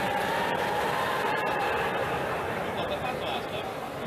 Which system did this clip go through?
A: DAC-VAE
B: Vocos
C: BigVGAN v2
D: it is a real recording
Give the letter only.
D